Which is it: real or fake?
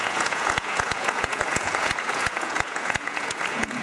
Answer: fake